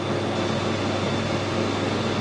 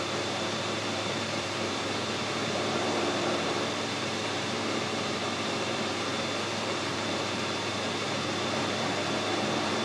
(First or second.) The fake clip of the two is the second